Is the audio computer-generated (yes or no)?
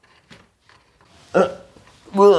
no